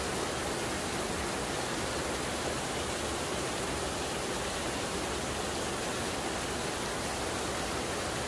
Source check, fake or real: real